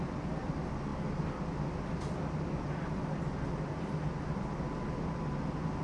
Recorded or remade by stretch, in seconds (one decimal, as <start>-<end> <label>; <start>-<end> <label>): 0.0-5.8 recorded